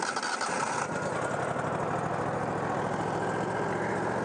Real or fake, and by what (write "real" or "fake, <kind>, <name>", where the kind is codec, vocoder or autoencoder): real